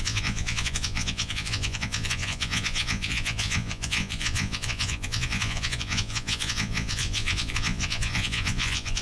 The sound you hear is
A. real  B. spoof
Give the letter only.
B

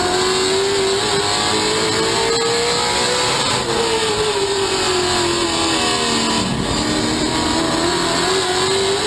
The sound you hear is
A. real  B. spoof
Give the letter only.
A